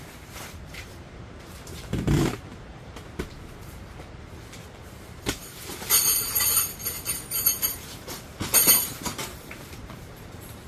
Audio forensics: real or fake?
fake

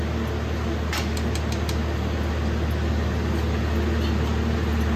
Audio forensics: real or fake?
real